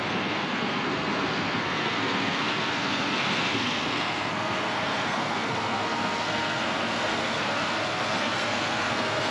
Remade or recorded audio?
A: remade